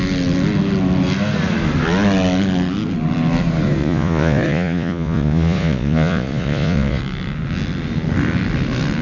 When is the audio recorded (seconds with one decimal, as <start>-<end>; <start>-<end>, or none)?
0.0-3.8; 7.0-9.0